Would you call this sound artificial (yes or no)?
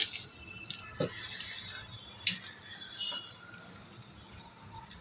no